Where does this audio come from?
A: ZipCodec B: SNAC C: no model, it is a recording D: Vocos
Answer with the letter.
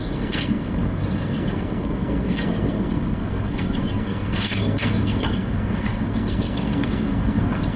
B